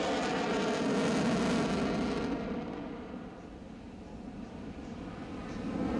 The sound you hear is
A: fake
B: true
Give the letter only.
B